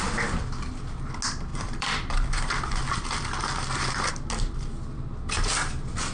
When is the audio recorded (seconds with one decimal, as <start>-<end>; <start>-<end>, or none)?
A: 0.0-1.5; 4.1-6.1